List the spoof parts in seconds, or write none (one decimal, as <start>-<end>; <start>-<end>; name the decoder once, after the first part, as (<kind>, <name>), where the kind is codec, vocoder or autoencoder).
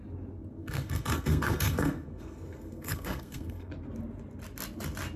0.6-3.7 (codec, SNAC)